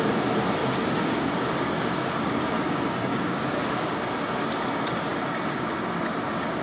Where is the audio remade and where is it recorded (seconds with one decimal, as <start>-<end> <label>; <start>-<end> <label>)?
0.0-0.6 recorded; 0.6-4.0 remade; 4.0-5.1 recorded; 5.1-5.7 remade; 5.7-6.6 recorded